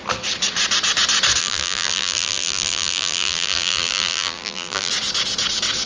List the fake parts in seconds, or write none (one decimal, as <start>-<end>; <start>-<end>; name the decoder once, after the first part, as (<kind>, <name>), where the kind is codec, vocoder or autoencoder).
1.4-4.9 (vocoder, BigVGAN v2)